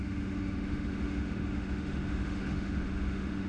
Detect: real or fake fake